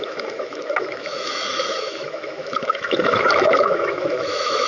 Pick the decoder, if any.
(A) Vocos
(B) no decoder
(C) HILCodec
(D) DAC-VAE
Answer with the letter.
D